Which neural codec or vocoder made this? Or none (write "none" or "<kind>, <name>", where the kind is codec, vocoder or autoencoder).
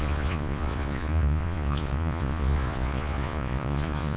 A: vocoder, Vocos